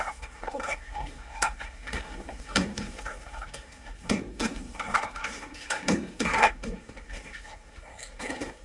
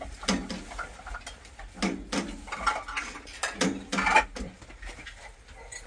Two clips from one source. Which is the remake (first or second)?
first